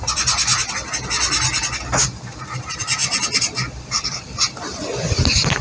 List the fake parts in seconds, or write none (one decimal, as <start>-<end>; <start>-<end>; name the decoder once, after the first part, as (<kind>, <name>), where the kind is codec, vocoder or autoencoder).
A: none